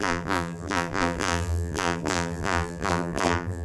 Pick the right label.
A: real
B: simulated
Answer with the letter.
B